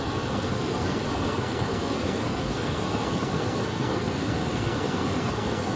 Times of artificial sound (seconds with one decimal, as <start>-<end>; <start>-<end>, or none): 0.0-5.8